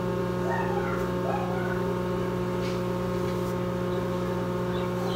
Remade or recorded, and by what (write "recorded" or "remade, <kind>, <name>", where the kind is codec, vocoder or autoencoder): recorded